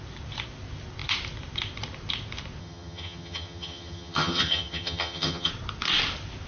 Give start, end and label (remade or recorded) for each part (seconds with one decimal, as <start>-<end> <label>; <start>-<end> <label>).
0.0-2.6 recorded; 2.6-5.5 remade; 5.5-6.5 recorded